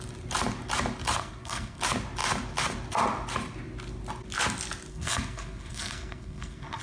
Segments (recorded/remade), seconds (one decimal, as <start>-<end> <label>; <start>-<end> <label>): 0.0-1.2 recorded; 1.2-1.8 remade; 1.8-4.9 recorded; 4.9-6.8 remade